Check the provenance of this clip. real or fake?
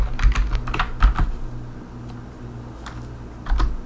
real